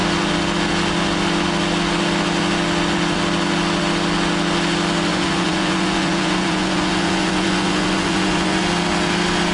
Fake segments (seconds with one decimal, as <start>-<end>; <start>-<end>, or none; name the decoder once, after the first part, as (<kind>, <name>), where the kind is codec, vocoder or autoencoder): 5.1-8.6 (vocoder, Vocos)